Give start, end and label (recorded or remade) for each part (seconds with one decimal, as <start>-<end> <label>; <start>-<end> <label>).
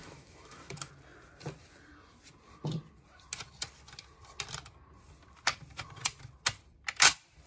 0.0-0.9 remade; 0.9-7.5 recorded